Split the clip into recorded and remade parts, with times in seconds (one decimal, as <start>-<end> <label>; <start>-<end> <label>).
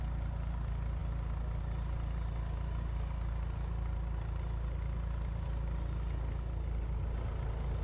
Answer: 0.0-7.8 recorded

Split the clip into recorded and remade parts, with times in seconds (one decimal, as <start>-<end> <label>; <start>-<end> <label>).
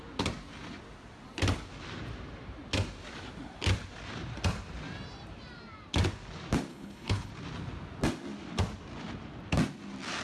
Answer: 0.0-6.7 recorded; 6.7-7.3 remade; 7.3-10.2 recorded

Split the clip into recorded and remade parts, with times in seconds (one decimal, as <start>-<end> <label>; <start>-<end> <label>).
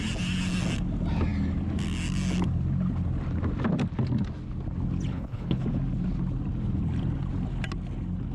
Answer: 0.0-5.1 recorded; 5.1-5.6 remade; 5.6-8.3 recorded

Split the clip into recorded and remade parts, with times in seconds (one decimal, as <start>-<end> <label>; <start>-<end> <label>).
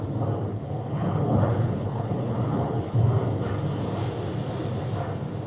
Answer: 0.0-0.5 recorded; 0.5-3.0 remade; 3.0-5.5 recorded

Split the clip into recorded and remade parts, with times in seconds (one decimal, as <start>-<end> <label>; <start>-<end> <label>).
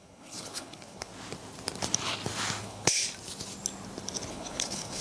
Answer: 0.0-1.1 remade; 1.1-2.6 recorded; 2.6-3.0 remade; 3.0-4.3 recorded; 4.3-5.0 remade